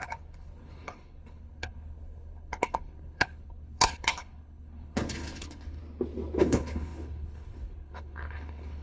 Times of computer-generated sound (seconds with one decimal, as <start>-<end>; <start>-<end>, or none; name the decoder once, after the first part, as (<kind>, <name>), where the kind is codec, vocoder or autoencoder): 0.0-5.8 (codec, HILCodec); 6.4-8.8